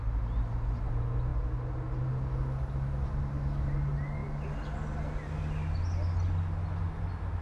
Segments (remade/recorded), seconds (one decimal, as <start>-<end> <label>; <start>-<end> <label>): 0.0-7.4 recorded